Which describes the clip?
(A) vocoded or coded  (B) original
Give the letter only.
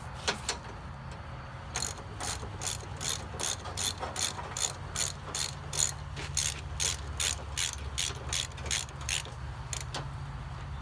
B